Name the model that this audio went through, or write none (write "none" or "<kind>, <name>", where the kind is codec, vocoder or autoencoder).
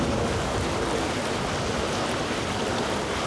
none